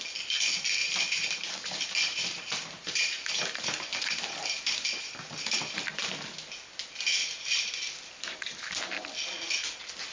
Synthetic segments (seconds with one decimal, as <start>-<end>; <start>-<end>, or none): 0.8-6.0; 7.2-7.7